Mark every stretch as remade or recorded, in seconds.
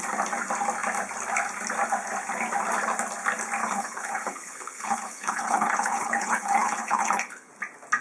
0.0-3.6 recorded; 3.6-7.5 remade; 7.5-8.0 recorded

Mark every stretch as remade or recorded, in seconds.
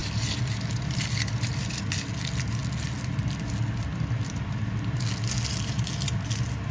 0.0-6.7 recorded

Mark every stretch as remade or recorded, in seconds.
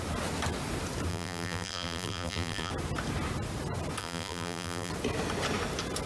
0.0-1.1 recorded; 1.1-2.7 remade; 2.7-4.0 recorded; 4.0-4.9 remade; 4.9-6.1 recorded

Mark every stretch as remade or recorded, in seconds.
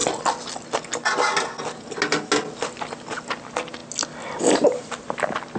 0.0-5.6 recorded